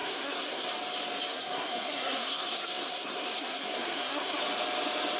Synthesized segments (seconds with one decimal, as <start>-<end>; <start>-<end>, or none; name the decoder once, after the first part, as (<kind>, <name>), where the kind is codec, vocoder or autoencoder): 0.0-0.7 (codec, SNAC); 1.3-4.4